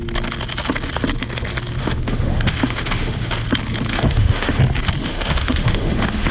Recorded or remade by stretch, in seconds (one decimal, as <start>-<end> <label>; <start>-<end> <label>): 0.0-1.8 recorded; 1.8-3.3 remade; 3.3-3.9 recorded; 3.9-4.6 remade; 4.6-5.0 recorded; 5.0-6.3 remade